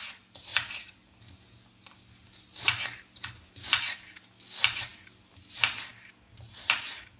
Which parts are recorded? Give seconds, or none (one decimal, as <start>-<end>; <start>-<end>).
0.0-0.5; 1.1-7.2